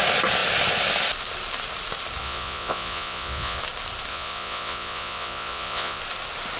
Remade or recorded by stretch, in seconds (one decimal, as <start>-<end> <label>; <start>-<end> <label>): 0.0-2.2 recorded; 2.2-3.6 remade; 3.6-4.1 recorded; 4.1-6.0 remade; 6.0-6.6 recorded